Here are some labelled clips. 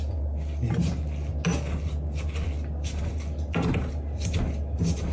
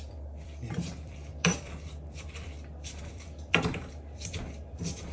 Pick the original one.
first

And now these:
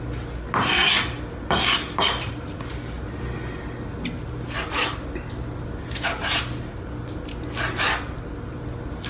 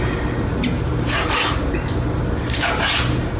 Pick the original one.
first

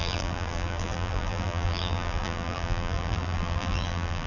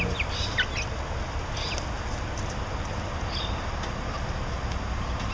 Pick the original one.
second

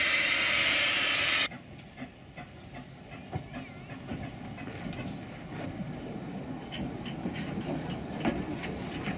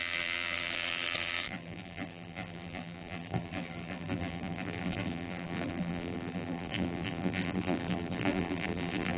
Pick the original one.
first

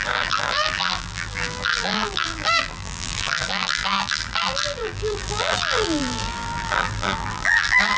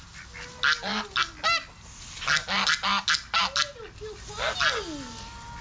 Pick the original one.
second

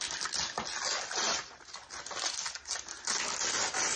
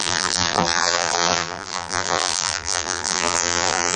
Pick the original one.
first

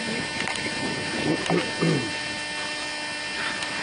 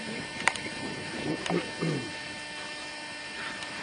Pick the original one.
first